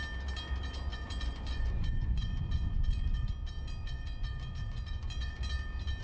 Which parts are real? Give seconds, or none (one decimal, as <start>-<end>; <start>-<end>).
0.0-0.9; 3.3-3.8; 5.4-6.0